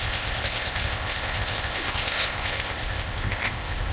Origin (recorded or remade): remade